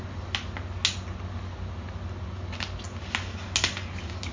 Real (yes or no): yes